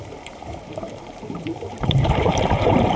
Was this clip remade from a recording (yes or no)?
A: yes